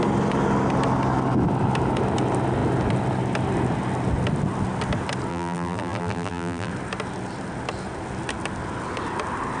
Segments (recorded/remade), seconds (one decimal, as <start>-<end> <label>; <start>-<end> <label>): 0.0-5.3 recorded; 5.3-6.7 remade; 6.7-9.6 recorded